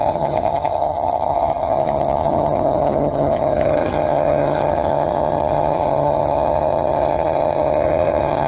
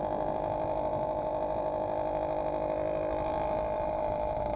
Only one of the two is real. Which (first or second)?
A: second